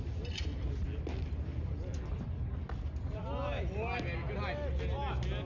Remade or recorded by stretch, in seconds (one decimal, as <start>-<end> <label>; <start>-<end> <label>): 0.0-5.5 recorded